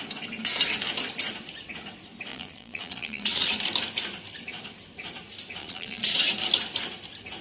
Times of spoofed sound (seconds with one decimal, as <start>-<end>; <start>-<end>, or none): 2.3-3.5; 5.6-6.3